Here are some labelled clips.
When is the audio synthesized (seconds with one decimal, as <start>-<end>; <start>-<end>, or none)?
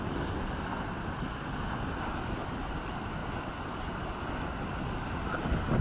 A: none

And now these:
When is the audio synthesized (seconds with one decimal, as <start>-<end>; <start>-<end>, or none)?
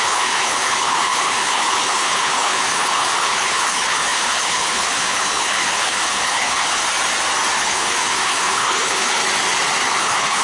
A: 0.0-6.8; 7.6-9.2; 10.0-10.4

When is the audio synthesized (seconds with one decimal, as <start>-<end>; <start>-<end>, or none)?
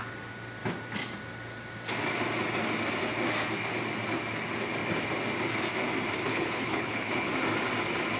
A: 6.2-7.3